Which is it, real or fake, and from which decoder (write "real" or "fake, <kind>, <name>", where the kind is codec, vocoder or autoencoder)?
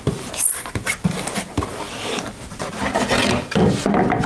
real